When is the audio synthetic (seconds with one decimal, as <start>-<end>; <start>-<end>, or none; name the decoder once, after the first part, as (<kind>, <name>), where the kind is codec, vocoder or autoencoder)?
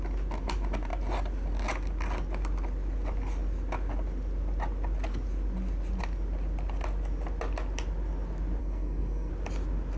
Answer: 8.6-9.3 (codec, SNAC)